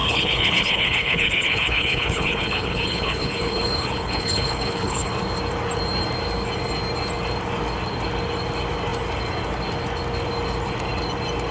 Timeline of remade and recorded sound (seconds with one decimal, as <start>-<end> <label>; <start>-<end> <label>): 0.0-5.1 remade; 5.1-11.5 recorded